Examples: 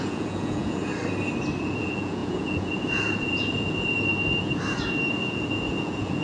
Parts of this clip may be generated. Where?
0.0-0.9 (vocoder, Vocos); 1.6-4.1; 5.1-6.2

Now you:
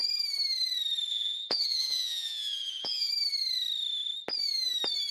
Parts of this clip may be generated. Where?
1.1-3.1 (vocoder, Vocos)

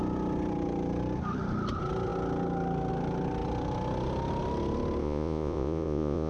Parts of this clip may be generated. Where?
5.0-6.3 (vocoder, Vocos)

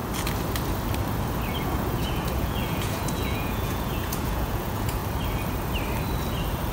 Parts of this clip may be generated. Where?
1.6-5.0 (vocoder, Vocos)

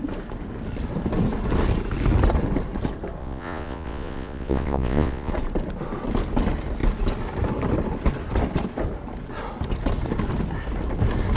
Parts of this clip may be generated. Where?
3.2-5.3 (vocoder, Vocos)

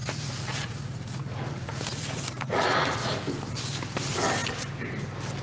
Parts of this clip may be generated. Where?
0.0-3.2 (vocoder, Vocos)